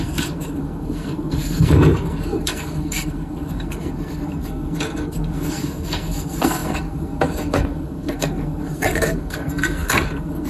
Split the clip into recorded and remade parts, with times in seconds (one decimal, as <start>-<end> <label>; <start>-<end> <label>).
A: 0.0-10.5 remade